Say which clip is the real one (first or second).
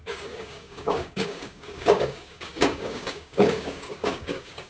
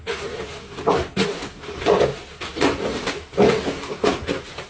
second